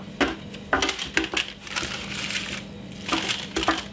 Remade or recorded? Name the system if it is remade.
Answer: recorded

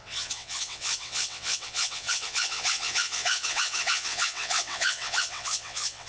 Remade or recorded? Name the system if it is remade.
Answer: remade, vocoder, WaveNeXt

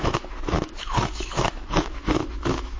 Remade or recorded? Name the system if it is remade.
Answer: remade, autoencoder, DAC-VAE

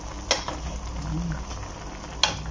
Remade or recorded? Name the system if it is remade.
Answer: recorded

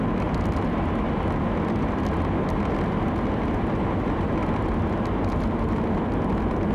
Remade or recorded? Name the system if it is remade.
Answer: recorded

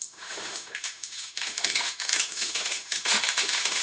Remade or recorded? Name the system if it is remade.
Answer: remade, autoencoder, DAC-VAE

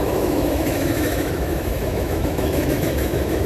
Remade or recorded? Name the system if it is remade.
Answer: remade, autoencoder, DAC-VAE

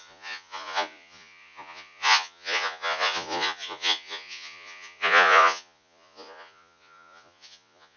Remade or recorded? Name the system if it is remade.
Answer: remade, vocoder, Vocos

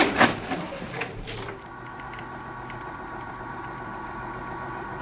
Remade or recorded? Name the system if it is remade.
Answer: remade, vocoder, BigVGAN v2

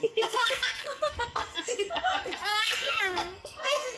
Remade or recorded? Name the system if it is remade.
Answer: remade, codec, SNAC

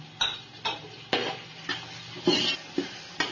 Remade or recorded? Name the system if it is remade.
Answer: recorded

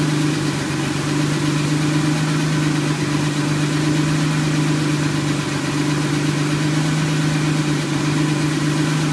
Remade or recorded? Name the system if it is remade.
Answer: recorded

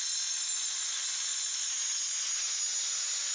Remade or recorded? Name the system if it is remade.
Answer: recorded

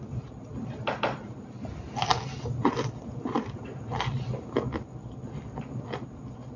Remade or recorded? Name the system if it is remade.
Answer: recorded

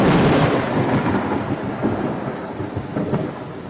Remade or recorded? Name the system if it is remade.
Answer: remade, vocoder, BigVGAN v2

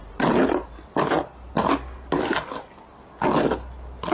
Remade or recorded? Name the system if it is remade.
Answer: recorded